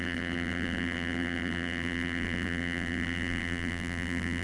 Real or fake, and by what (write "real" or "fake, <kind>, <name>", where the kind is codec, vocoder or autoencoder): fake, vocoder, BigVGAN v2